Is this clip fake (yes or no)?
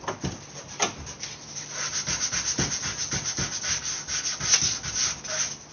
no